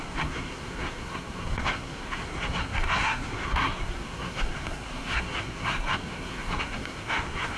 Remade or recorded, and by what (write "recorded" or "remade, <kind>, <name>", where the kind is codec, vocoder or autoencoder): remade, codec, SNAC